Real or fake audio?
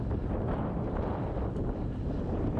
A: real